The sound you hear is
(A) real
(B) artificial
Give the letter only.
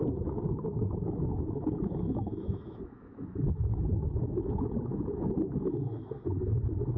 B